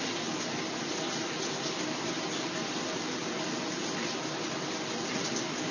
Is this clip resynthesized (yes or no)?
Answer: no